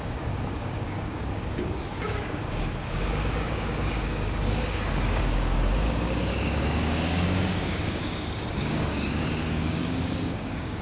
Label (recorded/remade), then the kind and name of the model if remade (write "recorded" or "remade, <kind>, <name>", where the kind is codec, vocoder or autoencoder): remade, codec, DAC